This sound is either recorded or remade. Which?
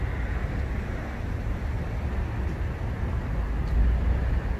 recorded